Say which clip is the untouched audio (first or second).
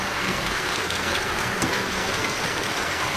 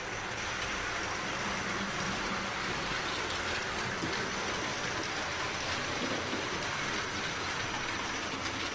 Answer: second